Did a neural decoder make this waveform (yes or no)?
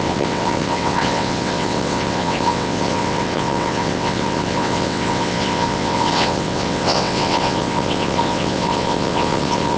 yes